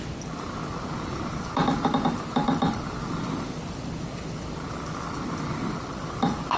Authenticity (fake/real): real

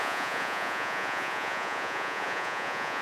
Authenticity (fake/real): fake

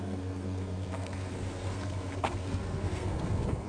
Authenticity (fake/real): fake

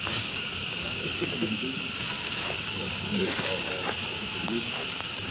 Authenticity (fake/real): fake